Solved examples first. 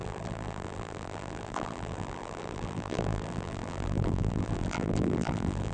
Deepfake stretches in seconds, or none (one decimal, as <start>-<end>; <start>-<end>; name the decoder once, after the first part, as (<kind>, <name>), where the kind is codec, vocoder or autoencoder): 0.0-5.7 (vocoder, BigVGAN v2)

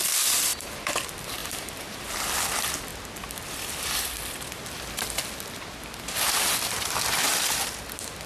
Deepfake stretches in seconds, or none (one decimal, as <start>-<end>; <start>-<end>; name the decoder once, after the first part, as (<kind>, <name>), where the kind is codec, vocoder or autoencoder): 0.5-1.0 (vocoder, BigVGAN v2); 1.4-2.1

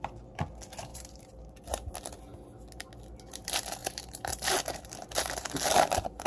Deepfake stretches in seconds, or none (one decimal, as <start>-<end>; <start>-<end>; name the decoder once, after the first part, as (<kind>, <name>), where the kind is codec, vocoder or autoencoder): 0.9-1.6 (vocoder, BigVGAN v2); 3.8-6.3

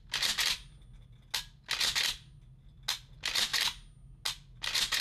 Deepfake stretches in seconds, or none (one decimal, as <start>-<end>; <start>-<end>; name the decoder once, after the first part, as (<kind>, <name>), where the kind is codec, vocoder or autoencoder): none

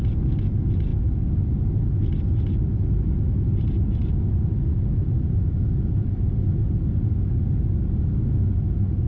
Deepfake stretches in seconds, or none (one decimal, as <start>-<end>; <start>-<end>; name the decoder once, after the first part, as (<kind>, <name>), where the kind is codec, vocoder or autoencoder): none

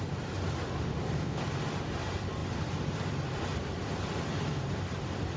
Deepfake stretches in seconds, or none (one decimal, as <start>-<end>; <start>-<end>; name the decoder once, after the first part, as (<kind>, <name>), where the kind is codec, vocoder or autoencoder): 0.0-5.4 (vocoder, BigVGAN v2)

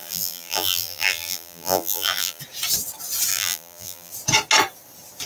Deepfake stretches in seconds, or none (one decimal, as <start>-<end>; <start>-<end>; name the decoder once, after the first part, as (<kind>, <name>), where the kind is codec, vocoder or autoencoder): 0.0-2.4 (vocoder, BigVGAN v2); 3.3-4.1

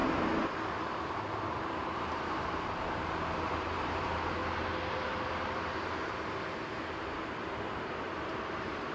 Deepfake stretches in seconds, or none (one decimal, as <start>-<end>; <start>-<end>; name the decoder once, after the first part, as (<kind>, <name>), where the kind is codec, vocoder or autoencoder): 1.5-4.4 (vocoder, BigVGAN v2); 8.3-8.9